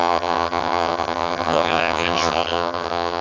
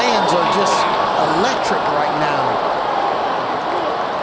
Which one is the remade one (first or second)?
first